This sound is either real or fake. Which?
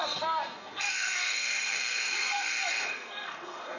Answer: fake